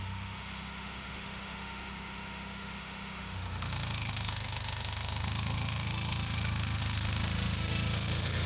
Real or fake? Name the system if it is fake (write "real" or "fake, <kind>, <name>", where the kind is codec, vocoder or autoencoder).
fake, autoencoder, DAC-VAE